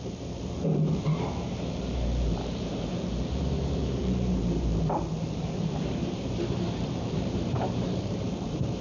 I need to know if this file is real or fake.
fake